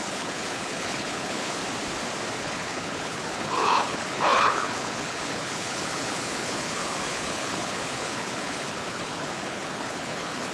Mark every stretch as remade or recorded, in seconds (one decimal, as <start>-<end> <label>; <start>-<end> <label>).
0.0-1.6 remade; 1.6-2.4 recorded; 2.4-10.5 remade